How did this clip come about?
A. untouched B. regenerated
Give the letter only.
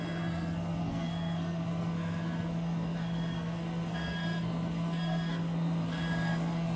B